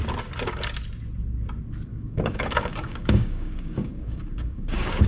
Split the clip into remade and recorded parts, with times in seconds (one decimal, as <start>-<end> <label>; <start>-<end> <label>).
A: 0.0-1.9 recorded; 1.9-5.1 remade